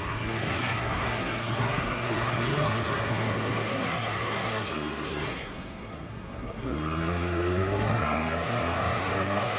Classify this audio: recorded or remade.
remade